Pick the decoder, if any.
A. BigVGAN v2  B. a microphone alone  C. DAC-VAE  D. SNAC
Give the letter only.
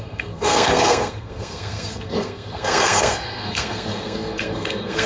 D